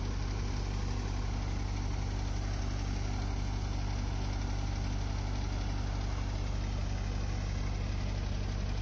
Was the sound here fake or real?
real